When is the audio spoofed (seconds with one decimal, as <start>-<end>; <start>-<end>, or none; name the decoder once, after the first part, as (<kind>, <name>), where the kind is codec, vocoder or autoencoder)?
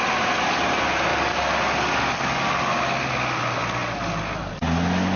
none